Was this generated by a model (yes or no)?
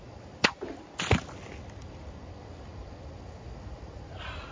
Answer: no